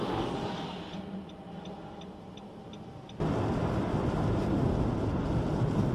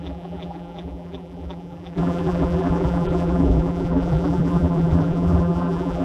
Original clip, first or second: first